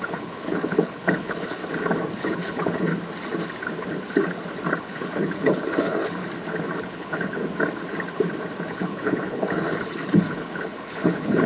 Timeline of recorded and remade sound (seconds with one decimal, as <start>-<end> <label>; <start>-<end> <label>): 0.0-1.6 remade; 1.6-2.2 recorded; 2.2-2.9 remade; 2.9-4.8 recorded; 4.8-6.2 remade; 6.2-6.8 recorded; 6.8-7.4 remade; 7.4-8.7 recorded; 8.7-11.5 remade